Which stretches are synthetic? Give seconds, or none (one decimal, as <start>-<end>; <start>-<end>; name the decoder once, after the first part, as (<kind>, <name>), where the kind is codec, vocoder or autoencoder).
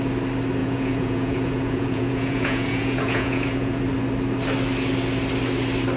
0.6-3.8 (vocoder, Vocos)